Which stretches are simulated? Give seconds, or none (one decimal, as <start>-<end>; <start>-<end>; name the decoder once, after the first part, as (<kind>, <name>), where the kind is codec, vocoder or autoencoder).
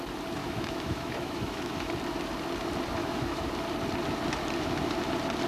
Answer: 0.4-1.9 (autoencoder, DAC-VAE); 3.0-3.5